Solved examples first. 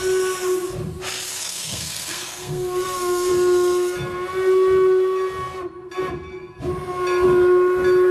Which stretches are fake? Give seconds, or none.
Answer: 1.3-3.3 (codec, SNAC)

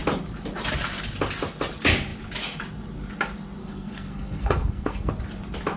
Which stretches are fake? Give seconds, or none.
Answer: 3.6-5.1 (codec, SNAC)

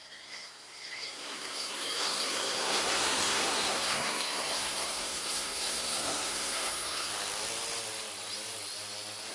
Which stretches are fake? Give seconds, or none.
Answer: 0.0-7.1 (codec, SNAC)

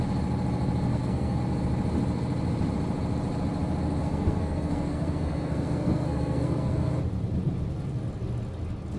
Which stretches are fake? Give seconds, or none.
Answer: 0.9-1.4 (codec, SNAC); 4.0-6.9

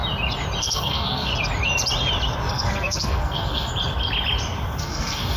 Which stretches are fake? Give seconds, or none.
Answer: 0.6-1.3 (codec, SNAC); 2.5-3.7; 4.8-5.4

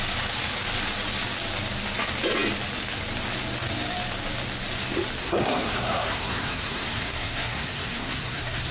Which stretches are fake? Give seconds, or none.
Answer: 5.2-8.7 (codec, SNAC)